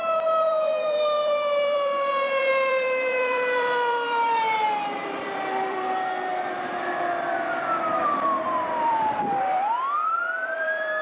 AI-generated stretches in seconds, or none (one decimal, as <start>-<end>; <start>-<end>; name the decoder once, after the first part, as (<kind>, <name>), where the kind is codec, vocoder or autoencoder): 0.0-6.3 (vocoder, BigVGAN v2); 8.0-11.0

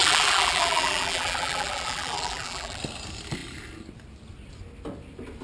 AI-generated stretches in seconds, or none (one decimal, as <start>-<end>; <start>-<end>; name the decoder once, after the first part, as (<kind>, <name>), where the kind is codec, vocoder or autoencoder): 0.0-2.8 (vocoder, BigVGAN v2)

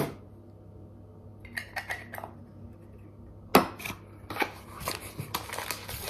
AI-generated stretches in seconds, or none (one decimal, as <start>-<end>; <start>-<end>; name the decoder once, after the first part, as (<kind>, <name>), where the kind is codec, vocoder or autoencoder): none

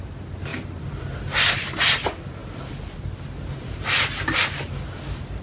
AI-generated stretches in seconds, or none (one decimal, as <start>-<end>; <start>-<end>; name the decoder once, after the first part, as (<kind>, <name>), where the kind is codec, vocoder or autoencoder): 0.5-2.0 (vocoder, BigVGAN v2); 2.4-4.7

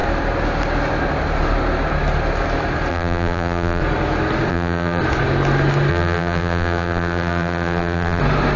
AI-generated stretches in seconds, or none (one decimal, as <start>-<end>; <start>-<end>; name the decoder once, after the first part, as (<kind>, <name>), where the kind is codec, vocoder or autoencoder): 2.9-3.8 (vocoder, BigVGAN v2); 4.5-5.0; 5.9-8.2

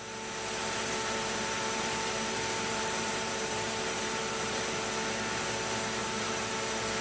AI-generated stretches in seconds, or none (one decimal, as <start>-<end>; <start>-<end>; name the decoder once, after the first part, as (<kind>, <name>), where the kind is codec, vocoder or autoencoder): 0.6-4.8 (vocoder, BigVGAN v2); 6.0-6.5

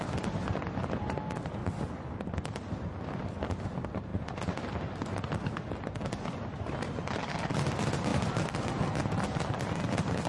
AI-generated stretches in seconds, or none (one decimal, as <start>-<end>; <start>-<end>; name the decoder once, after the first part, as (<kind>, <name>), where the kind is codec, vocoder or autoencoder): 1.6-3.0 (vocoder, BigVGAN v2); 8.1-8.7

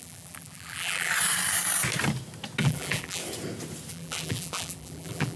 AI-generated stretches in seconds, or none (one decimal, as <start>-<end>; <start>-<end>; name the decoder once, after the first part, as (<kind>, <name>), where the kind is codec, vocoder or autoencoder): 0.0-1.1 (vocoder, BigVGAN v2); 2.6-3.2; 3.9-5.4